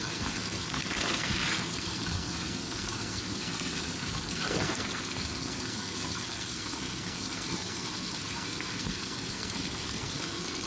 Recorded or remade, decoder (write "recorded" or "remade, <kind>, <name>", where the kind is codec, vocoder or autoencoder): remade, codec, SNAC